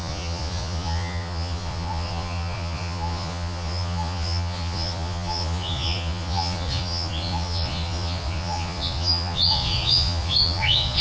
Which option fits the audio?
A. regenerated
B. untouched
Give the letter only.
A